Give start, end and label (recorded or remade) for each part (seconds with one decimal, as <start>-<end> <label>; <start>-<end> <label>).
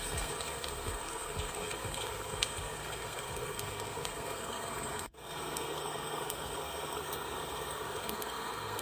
0.0-8.8 remade